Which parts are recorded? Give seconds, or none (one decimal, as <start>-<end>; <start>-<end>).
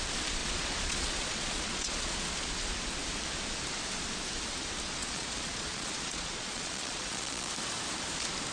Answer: 0.0-0.4; 2.3-5.0; 7.5-8.5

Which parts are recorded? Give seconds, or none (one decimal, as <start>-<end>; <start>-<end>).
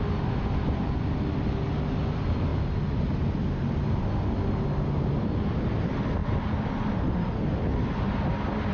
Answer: 0.0-8.7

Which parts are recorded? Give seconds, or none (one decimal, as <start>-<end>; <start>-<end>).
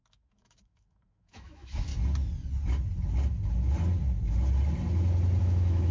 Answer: 1.9-5.4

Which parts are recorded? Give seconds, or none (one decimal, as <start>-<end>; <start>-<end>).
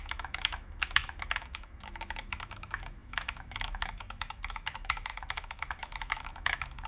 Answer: none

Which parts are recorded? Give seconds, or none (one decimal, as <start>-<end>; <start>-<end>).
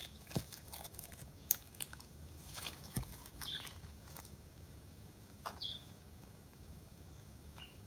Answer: none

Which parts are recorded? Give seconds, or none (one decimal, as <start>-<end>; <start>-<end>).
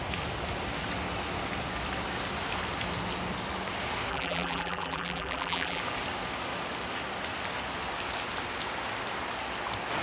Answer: 0.0-4.1; 5.8-10.0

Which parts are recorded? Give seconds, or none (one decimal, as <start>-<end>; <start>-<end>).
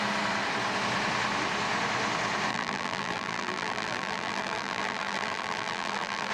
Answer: 0.0-2.5